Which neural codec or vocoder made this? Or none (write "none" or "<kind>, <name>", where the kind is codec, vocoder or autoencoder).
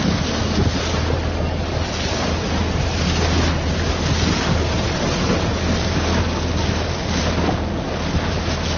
none